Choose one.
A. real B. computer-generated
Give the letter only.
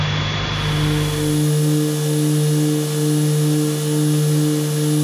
A